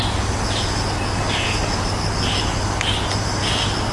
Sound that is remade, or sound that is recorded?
recorded